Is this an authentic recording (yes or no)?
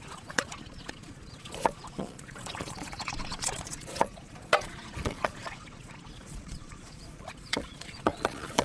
no